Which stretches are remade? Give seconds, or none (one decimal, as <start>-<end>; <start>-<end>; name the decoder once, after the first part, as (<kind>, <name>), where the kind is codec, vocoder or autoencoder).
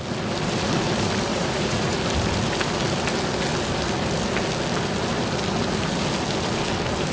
1.3-2.0 (vocoder, Vocos)